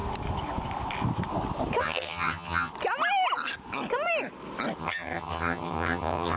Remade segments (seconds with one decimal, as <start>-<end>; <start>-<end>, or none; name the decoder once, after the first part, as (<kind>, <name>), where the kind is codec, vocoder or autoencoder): 1.8-2.7 (vocoder, HiFi-GAN); 4.8-6.4